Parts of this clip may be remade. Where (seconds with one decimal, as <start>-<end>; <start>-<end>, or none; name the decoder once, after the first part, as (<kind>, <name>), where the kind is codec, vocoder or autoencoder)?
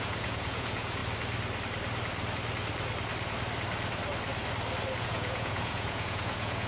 0.0-1.0 (vocoder, Vocos); 5.0-6.7